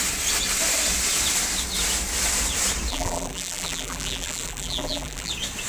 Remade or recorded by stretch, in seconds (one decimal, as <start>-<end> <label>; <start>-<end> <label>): 0.0-2.9 recorded; 2.9-5.3 remade; 5.3-5.7 recorded